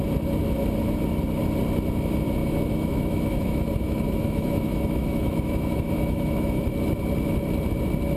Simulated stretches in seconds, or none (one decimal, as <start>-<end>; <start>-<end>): 2.4-6.6